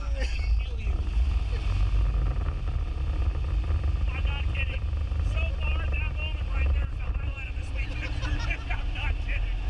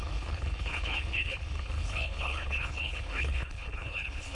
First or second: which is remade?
second